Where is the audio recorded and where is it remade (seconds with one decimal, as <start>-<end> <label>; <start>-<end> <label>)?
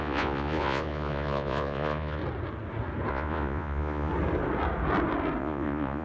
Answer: 0.0-2.2 remade; 2.2-3.1 recorded; 3.1-4.1 remade; 4.1-5.4 recorded; 5.4-6.0 remade